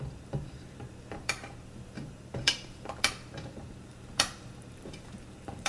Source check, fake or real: fake